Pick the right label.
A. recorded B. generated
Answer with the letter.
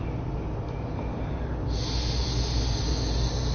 A